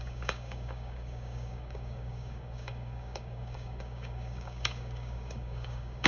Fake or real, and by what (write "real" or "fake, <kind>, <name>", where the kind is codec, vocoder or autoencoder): fake, codec, DAC